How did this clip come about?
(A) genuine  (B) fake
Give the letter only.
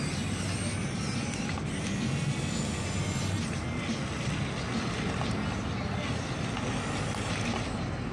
A